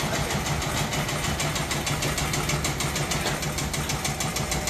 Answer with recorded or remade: recorded